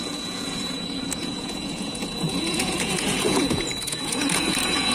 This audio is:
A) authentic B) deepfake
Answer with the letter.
B